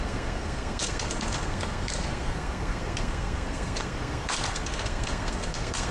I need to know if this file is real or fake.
fake